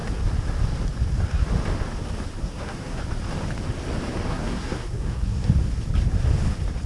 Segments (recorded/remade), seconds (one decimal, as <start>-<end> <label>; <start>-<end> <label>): 0.0-2.4 recorded; 2.4-3.0 remade; 3.0-4.3 recorded; 4.3-5.5 remade; 5.5-6.9 recorded